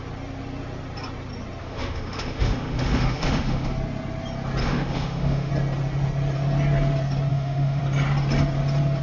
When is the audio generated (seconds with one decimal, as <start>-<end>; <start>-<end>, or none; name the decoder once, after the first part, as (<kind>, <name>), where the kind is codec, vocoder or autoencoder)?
1.6-3.7 (autoencoder, DAC-VAE); 4.6-5.5; 7.3-7.8